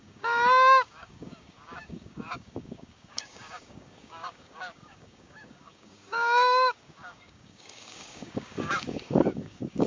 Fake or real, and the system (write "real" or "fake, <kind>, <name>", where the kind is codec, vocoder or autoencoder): fake, codec, DAC